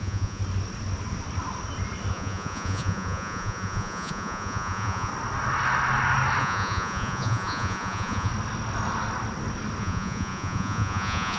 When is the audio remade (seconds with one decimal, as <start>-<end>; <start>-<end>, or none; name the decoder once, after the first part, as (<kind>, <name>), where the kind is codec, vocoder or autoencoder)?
0.0-0.4 (vocoder, Vocos); 2.1-5.1; 6.4-8.3; 9.8-11.4